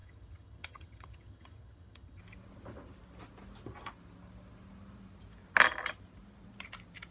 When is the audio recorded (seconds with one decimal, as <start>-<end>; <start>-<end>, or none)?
2.2-7.1